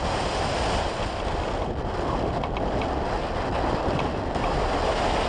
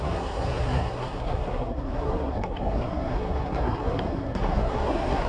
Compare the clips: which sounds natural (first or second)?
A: first